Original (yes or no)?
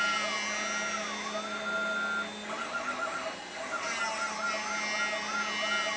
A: yes